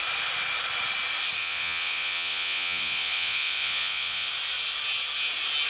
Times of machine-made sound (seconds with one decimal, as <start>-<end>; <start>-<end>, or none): 1.4-4.3